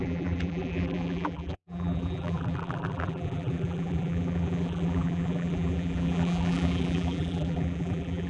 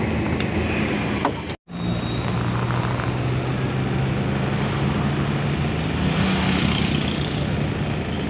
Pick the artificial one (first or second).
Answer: first